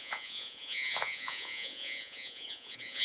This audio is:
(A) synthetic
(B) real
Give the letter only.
A